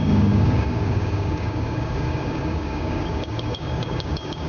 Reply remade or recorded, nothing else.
remade